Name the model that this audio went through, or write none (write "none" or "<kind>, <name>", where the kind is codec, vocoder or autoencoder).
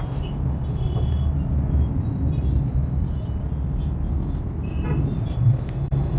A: none